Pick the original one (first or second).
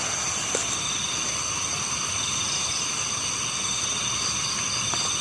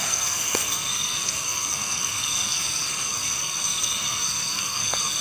first